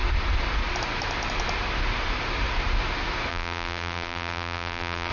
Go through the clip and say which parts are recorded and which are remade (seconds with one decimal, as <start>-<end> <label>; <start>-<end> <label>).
0.0-3.3 recorded; 3.3-5.1 remade